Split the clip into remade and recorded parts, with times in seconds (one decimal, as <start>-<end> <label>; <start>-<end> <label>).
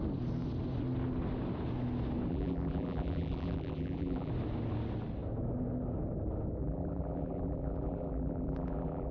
0.0-2.3 recorded; 2.3-4.3 remade; 4.3-6.6 recorded; 6.6-9.1 remade